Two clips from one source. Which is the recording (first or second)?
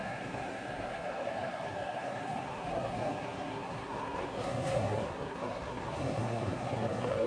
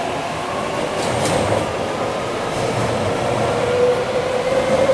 second